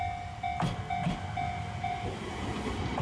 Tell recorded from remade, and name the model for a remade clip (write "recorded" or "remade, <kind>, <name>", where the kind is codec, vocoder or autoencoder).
recorded